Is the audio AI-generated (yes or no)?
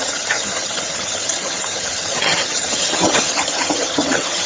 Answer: yes